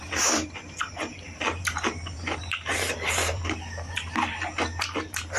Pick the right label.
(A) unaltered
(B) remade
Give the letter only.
B